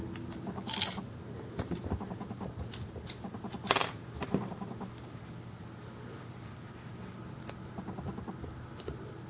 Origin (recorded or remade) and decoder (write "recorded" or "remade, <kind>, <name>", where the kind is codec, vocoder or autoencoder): recorded